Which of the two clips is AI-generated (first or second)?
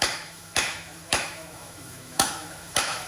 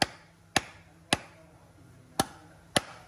first